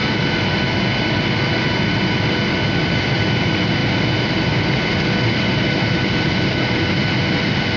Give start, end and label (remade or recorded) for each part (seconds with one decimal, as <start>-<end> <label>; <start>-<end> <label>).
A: 0.0-7.8 recorded

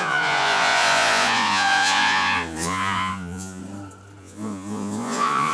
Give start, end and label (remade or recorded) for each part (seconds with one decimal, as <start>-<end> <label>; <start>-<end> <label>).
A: 0.0-3.6 remade; 3.6-4.2 recorded; 4.2-5.5 remade